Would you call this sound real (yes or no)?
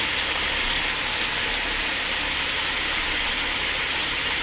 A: yes